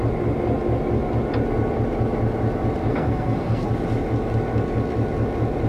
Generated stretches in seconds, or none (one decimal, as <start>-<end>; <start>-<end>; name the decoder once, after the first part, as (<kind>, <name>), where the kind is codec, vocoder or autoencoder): 2.9-3.7 (codec, SNAC)